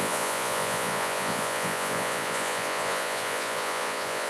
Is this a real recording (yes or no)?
no